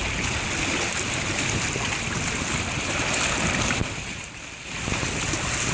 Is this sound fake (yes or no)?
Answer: no